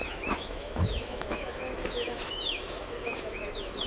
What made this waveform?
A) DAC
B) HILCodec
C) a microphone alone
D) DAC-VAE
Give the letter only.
D